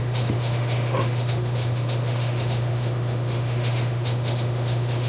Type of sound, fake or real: fake